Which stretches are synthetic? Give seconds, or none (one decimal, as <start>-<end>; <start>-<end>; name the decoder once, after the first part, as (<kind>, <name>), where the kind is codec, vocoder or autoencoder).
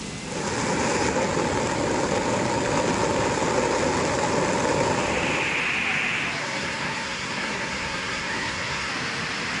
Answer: 6.4-8.9 (codec, SNAC)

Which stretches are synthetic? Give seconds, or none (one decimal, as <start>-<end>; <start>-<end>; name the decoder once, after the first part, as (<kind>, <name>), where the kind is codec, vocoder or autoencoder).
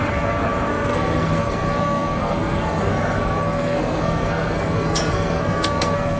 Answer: 0.0-6.2 (codec, SNAC)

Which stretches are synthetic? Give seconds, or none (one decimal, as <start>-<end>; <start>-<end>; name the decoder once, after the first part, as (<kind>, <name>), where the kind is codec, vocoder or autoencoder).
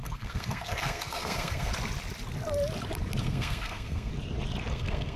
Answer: 0.0-1.7 (codec, SNAC); 3.2-4.1; 4.7-5.2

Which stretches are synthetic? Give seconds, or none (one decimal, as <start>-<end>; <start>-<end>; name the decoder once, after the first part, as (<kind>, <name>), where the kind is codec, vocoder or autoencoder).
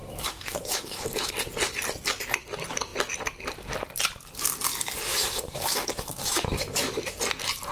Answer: 0.0-1.3 (autoencoder, DAC-VAE); 5.1-7.2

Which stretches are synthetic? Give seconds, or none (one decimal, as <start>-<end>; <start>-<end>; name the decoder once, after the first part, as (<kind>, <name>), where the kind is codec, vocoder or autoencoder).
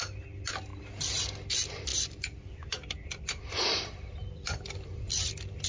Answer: 0.7-1.5 (vocoder, BigVGAN v2); 1.9-5.3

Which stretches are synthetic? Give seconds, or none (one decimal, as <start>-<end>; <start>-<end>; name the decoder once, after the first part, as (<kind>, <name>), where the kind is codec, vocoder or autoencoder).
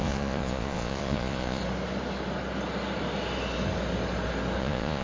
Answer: 0.0-1.6 (vocoder, Vocos); 4.6-5.0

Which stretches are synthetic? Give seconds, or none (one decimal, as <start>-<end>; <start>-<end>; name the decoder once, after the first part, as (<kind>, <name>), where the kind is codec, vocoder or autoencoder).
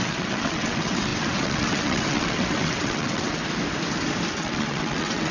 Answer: 0.0-3.4 (vocoder, WaveNeXt); 4.3-5.3